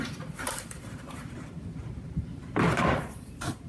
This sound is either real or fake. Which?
fake